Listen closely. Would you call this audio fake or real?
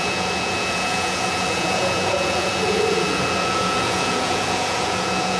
fake